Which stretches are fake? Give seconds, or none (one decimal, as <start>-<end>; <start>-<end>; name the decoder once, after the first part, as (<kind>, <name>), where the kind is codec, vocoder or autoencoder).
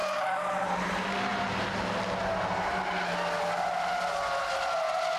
none